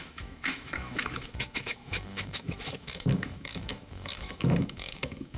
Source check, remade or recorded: remade